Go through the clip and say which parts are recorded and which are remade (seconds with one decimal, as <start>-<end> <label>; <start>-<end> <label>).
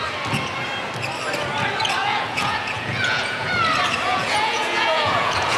0.0-2.0 recorded; 2.0-3.5 remade; 3.5-4.1 recorded; 4.1-5.6 remade